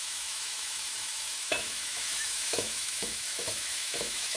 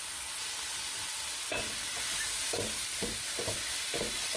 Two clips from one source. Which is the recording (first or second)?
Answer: second